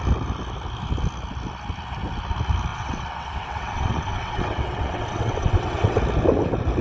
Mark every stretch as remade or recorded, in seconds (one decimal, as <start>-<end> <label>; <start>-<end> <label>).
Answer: 0.0-2.7 recorded; 2.7-6.0 remade; 6.0-6.8 recorded